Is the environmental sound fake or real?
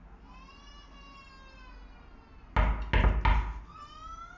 real